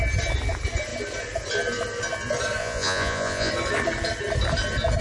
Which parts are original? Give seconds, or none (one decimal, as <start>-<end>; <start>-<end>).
0.0-2.6; 3.5-5.0